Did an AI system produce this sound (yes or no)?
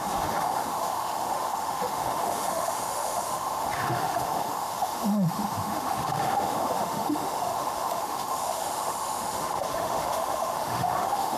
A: yes